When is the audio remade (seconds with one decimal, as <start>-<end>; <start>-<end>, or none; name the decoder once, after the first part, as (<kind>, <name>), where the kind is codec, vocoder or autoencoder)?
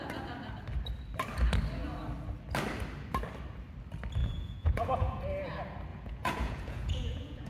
4.2-5.2 (vocoder, Vocos); 5.9-7.5